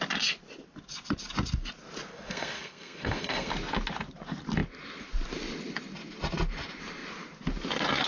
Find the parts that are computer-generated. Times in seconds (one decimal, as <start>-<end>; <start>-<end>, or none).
2.1-3.5